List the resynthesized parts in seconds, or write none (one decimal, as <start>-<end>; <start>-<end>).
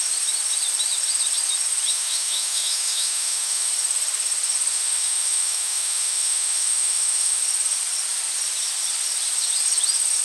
1.9-3.7; 4.7-7.4